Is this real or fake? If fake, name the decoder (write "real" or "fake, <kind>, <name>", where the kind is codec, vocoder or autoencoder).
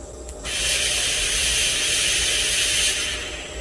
real